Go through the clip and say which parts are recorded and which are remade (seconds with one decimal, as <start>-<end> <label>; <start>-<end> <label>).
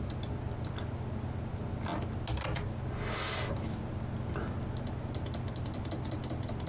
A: 0.0-6.7 recorded